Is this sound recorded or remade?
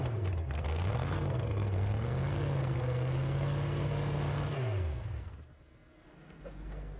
remade